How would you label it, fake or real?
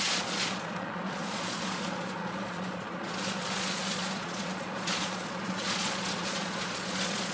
fake